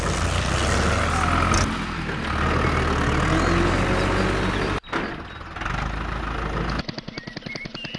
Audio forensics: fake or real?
real